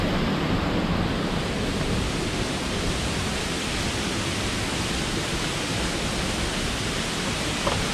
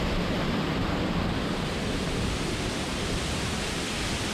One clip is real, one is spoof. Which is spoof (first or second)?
second